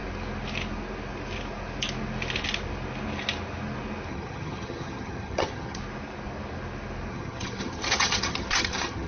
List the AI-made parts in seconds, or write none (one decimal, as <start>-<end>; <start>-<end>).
4.1-5.8; 7.1-9.1

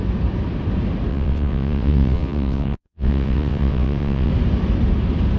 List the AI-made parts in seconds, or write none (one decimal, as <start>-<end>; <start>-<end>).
1.1-4.3